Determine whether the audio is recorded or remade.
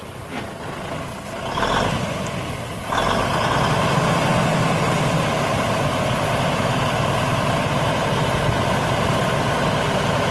recorded